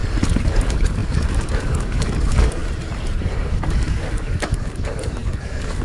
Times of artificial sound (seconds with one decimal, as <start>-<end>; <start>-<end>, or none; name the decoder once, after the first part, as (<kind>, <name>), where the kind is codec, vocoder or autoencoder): 0.5-2.6 (codec, DAC); 3.2-5.8